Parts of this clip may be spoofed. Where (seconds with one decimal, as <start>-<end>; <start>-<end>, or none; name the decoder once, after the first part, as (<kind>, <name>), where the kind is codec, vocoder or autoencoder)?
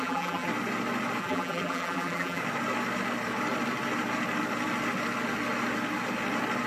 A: 0.0-0.5 (vocoder, BigVGAN v2); 1.2-2.4